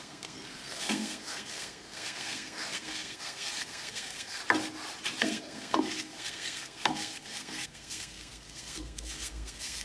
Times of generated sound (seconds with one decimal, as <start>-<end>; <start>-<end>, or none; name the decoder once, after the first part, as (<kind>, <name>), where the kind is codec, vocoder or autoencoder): 0.0-4.4 (codec, SNAC); 5.2-9.8